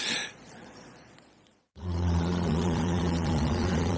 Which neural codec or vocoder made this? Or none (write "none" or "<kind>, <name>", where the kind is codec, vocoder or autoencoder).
vocoder, Vocos